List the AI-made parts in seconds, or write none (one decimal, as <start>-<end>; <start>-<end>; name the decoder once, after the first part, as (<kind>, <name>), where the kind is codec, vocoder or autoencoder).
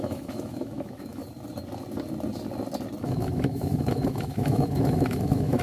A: 0.0-1.2 (autoencoder, DAC-VAE); 3.0-5.6